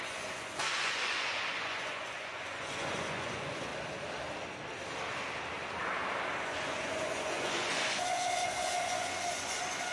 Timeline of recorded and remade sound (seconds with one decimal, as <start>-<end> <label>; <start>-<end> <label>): 0.0-3.7 remade; 3.7-6.4 recorded; 6.4-9.9 remade